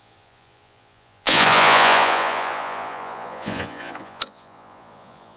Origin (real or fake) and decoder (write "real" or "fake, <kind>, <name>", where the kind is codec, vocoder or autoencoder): fake, vocoder, Vocos